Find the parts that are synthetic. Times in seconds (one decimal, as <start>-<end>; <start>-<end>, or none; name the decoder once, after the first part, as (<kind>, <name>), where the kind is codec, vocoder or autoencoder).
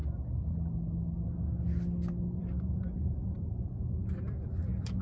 2.4-3.7 (vocoder, BigVGAN v2)